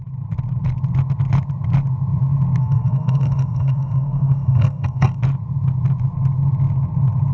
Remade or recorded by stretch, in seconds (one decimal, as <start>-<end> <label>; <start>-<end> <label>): 0.0-2.6 recorded; 2.6-5.2 remade; 5.2-7.3 recorded